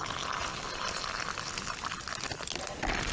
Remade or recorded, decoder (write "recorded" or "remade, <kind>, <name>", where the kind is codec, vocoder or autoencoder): recorded